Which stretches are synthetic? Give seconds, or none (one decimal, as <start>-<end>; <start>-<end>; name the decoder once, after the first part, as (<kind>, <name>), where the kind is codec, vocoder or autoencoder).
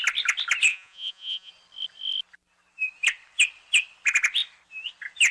0.7-1.5 (vocoder, Vocos)